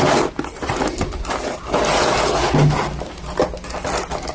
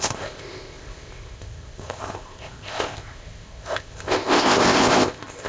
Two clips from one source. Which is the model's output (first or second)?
second